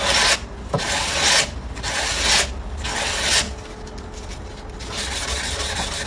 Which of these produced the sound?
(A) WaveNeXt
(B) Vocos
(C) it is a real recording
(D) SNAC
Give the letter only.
C